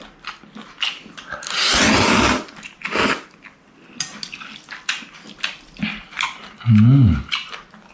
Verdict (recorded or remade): recorded